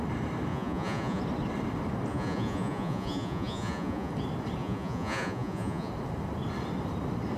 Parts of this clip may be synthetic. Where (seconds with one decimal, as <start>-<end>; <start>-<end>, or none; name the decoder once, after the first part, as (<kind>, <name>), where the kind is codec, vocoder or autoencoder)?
0.5-1.2 (vocoder, Vocos); 2.1-4.1; 4.6-5.9